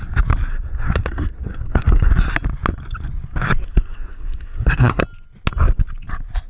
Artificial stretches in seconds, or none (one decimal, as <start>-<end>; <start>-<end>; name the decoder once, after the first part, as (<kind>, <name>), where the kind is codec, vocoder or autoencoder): 0.5-2.1 (codec, SNAC); 3.6-5.0